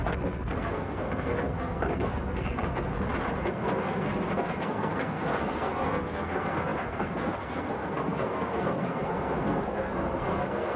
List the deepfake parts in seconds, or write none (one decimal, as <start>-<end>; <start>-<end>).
0.0-2.9; 3.4-10.8